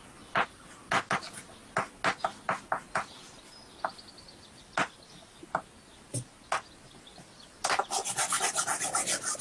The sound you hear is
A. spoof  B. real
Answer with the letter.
B